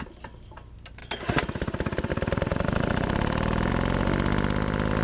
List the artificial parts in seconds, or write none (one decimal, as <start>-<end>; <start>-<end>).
2.5-3.7